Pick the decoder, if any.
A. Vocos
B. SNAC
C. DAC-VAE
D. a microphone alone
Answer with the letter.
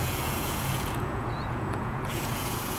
A